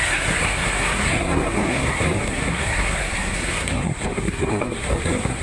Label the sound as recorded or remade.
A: remade